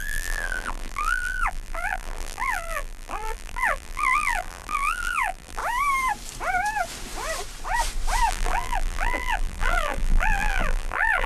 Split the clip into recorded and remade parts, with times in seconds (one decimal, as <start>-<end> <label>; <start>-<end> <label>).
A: 0.0-5.6 remade; 5.6-8.3 recorded; 8.3-11.3 remade

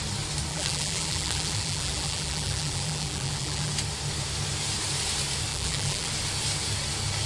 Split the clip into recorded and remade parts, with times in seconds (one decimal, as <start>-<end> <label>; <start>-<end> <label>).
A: 0.0-0.5 recorded; 0.5-3.7 remade; 3.7-5.5 recorded; 5.5-6.1 remade; 6.1-7.3 recorded

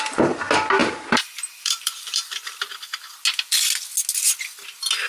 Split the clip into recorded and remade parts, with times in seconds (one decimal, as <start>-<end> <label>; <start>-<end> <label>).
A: 0.0-0.8 recorded; 0.8-2.7 remade; 2.7-5.1 recorded

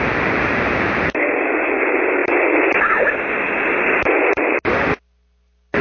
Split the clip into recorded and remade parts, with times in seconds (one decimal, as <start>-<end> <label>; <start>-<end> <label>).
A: 0.0-5.8 recorded

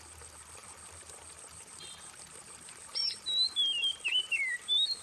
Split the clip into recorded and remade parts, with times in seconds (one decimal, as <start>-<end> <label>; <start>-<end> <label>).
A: 0.0-0.6 recorded; 0.6-3.5 remade; 3.5-3.9 recorded; 3.9-5.0 remade

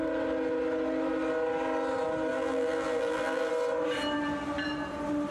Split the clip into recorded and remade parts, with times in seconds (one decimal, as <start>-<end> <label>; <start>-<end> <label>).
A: 0.0-2.3 recorded; 2.3-3.5 remade; 3.5-5.3 recorded

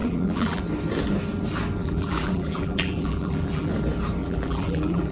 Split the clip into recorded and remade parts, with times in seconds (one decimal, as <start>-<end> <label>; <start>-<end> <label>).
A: 0.0-0.6 remade; 0.6-1.8 recorded; 1.8-3.7 remade; 3.7-4.2 recorded; 4.2-5.1 remade

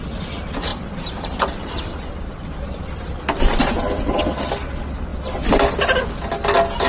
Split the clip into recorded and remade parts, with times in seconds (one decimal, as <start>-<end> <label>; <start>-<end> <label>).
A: 0.0-0.7 recorded; 0.7-4.2 remade; 4.2-6.9 recorded